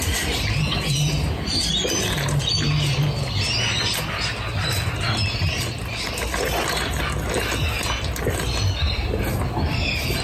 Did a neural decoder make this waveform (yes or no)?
no